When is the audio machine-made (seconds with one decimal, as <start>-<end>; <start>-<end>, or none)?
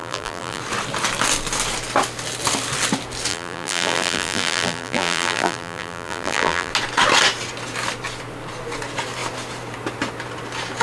0.0-0.6; 3.3-6.7